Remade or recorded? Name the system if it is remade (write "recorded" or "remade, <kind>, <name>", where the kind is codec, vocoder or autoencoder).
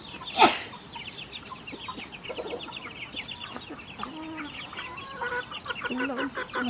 recorded